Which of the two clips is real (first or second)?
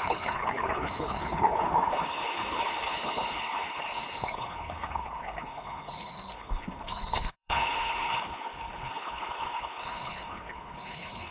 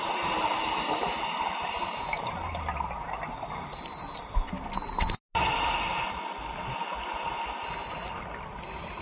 second